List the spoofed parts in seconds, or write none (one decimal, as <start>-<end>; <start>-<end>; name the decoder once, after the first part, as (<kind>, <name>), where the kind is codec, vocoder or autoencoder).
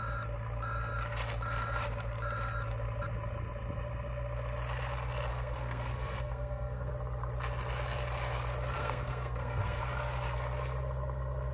5.3-6.9 (codec, SNAC); 8.8-9.8